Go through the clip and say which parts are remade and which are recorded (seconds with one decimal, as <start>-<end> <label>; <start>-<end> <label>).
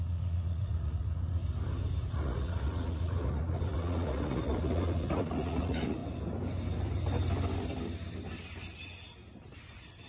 0.0-1.4 remade; 1.4-2.1 recorded; 2.1-6.0 remade; 6.0-10.1 recorded